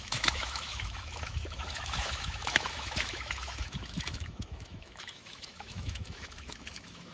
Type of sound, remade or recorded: remade